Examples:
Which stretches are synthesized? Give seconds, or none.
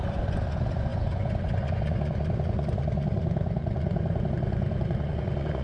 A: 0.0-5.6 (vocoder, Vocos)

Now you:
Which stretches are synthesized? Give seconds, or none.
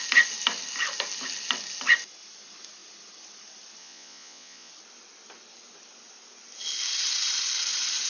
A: 3.8-4.7 (vocoder, Vocos)